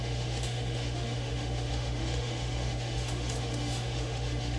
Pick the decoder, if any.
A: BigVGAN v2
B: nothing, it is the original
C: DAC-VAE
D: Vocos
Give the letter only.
C